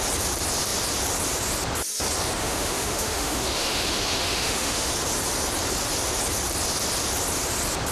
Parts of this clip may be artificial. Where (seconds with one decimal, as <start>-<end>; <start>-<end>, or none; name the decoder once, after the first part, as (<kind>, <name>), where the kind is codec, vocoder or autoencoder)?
2.4-4.9 (autoencoder, DAC-VAE)